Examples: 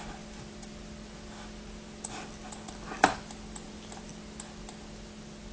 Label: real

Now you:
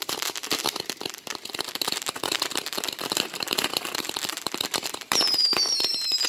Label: fake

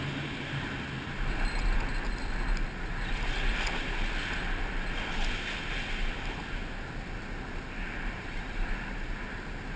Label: real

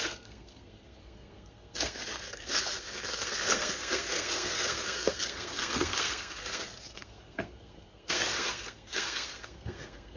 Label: fake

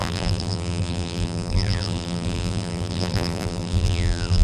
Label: fake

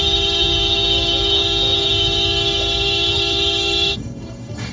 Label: fake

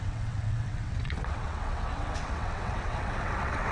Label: fake